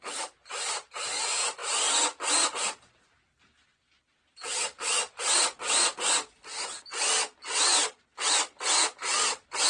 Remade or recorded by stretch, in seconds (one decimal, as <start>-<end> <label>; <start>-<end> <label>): 0.0-9.7 recorded